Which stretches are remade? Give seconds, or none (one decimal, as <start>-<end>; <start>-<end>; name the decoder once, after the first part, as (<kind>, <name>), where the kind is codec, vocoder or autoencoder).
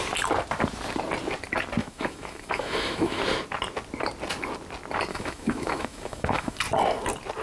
1.8-3.2 (autoencoder, DAC-VAE); 5.1-6.6